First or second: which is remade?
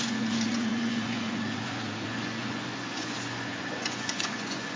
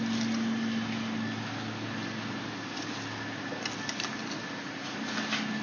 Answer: first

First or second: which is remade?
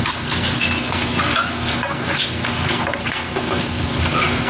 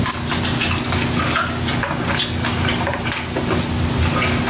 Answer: first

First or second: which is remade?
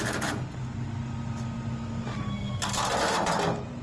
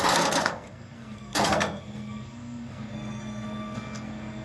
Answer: second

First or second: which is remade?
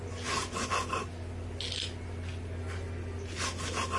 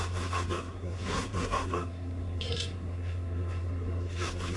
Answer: second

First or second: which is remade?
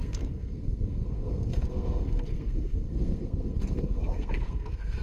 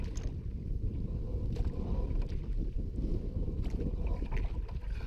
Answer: first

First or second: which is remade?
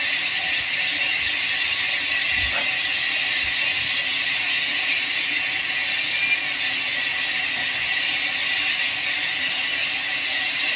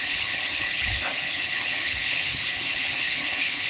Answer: second